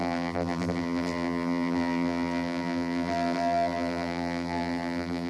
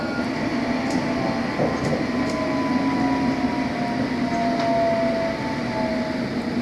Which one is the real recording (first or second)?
second